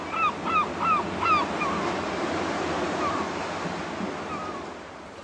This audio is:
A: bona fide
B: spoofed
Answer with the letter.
A